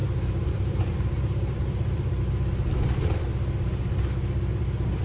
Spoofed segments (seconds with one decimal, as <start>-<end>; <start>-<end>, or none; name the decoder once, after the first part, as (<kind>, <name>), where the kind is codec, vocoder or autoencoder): 0.0-2.2 (vocoder, BigVGAN v2)